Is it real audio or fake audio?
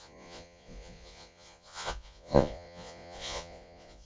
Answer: fake